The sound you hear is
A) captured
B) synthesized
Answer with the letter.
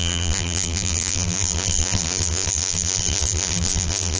B